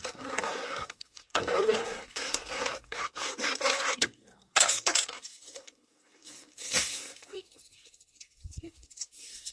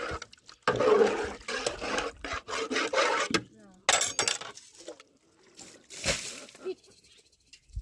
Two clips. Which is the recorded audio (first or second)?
second